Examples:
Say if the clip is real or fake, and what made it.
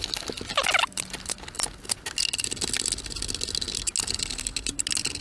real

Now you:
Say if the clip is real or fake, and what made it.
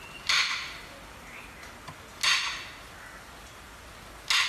real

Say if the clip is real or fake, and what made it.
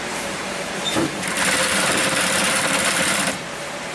fake, vocoder, BigVGAN v2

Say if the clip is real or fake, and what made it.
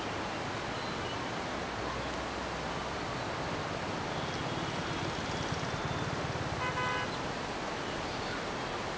real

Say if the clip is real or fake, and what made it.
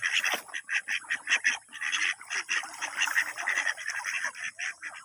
real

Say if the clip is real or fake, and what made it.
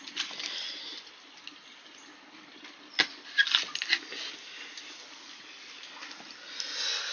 real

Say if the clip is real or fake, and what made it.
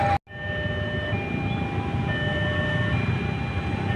real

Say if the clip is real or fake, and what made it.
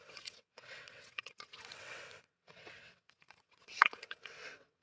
fake, vocoder, WaveNeXt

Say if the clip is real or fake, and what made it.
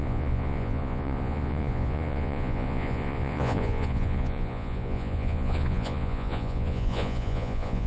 fake, vocoder, Vocos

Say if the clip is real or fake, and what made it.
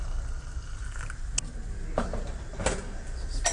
real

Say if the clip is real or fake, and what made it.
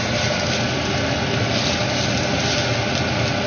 real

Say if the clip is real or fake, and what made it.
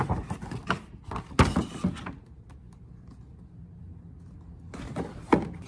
real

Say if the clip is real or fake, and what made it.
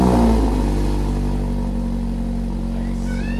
real